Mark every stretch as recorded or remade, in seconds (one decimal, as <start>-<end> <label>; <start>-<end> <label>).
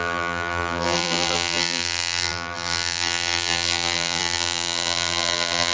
0.0-5.7 remade